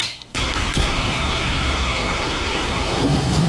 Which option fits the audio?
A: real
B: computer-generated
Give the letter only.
B